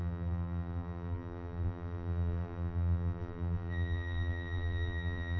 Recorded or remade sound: remade